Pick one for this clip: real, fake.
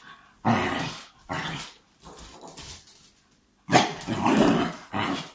real